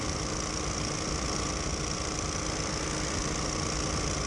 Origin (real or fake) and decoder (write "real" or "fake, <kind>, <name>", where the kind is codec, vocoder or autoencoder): real